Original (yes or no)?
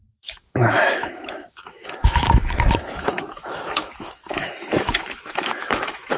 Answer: no